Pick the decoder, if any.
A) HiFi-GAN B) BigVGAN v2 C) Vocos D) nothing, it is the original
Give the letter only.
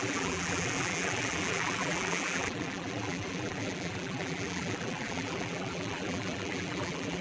B